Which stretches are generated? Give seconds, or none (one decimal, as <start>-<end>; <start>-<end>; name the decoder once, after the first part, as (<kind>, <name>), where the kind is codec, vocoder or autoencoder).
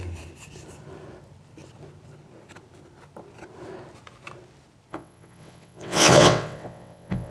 4.9-7.3 (vocoder, WaveNeXt)